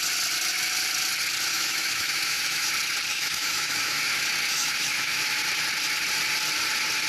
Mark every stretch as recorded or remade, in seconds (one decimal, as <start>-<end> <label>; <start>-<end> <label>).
0.0-1.5 recorded; 1.5-2.7 remade; 2.7-3.1 recorded; 3.1-4.1 remade; 4.1-4.5 recorded; 4.5-5.4 remade; 5.4-7.1 recorded